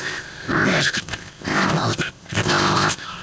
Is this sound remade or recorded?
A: remade